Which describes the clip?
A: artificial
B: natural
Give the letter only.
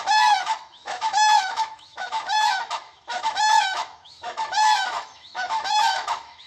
A